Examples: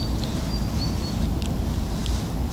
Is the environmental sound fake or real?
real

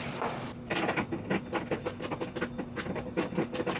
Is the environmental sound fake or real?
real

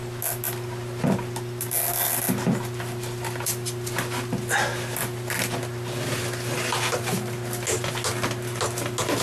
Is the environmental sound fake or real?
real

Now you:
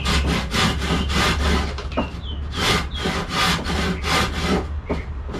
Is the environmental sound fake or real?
real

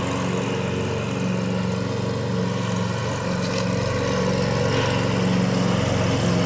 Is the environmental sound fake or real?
real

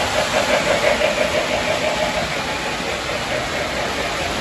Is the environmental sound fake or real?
real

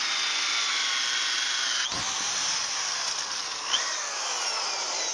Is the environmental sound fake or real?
real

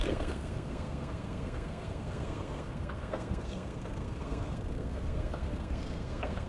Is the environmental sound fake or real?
fake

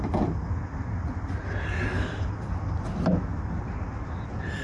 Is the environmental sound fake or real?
real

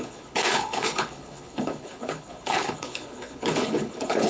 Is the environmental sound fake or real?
fake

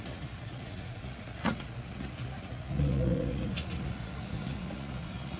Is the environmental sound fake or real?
fake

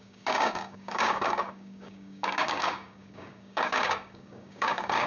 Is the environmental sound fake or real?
fake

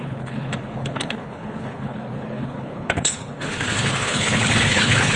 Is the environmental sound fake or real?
fake